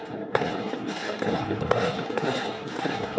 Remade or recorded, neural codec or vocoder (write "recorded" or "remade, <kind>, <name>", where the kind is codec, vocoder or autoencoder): remade, codec, SNAC